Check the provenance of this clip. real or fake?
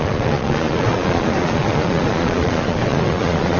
fake